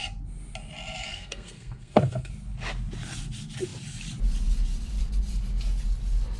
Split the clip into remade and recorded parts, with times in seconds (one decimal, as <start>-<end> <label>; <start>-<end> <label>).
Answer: 0.0-1.1 recorded; 1.1-2.3 remade; 2.3-6.4 recorded